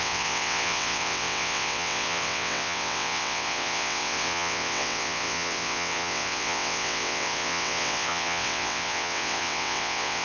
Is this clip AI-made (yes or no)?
yes